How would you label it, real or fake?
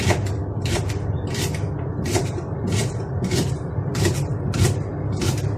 real